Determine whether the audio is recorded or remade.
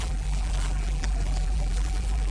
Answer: remade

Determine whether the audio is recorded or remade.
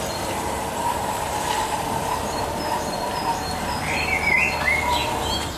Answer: remade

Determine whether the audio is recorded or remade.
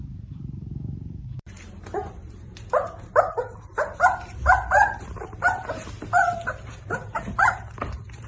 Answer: remade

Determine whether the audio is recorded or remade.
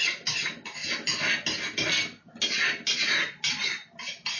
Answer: recorded